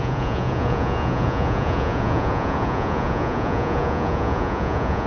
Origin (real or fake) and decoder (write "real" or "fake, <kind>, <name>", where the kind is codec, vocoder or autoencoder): fake, vocoder, Vocos